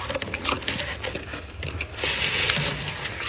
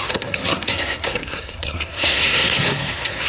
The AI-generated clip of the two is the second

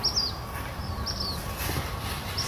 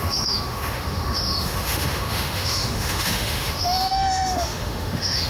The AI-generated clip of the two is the second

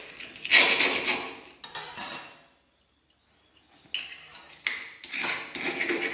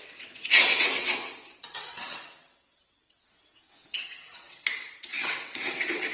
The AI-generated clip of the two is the second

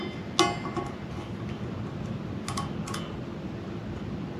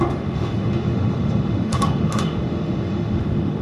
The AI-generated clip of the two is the second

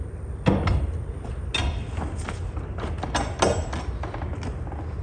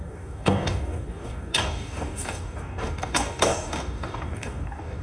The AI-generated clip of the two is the second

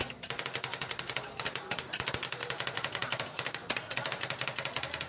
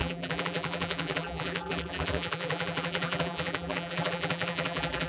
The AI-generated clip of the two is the second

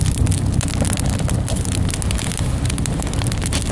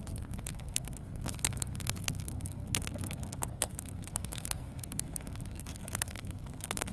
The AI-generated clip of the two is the second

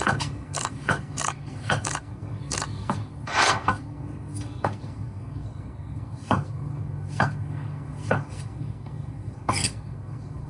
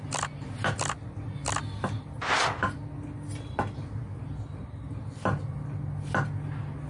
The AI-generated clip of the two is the first